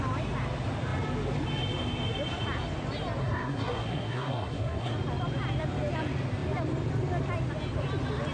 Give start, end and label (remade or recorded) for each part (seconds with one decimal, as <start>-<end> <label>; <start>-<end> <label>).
0.0-3.2 recorded; 3.2-4.9 remade; 4.9-8.3 recorded